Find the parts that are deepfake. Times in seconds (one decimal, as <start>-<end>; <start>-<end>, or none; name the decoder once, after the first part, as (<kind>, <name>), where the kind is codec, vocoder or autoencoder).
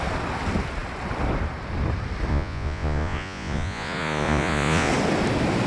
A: 2.3-4.9 (vocoder, Vocos)